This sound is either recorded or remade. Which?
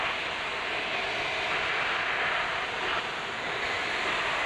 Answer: recorded